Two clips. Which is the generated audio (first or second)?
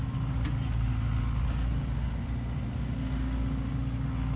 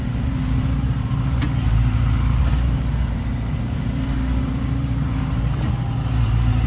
second